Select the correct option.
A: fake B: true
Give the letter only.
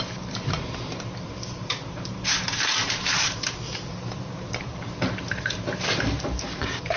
A